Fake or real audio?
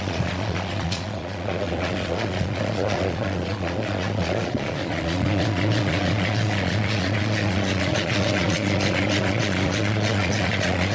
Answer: fake